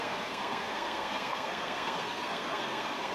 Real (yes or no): no